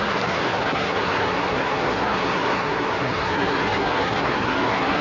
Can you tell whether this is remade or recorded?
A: remade